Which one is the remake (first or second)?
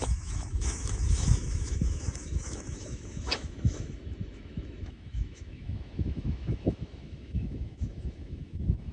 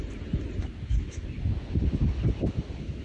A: first